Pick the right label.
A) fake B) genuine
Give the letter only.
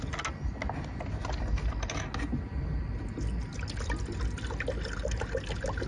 B